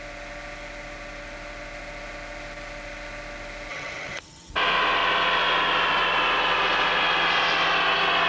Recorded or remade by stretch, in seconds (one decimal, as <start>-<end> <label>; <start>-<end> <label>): 0.0-3.7 recorded; 3.7-4.5 remade; 4.5-8.3 recorded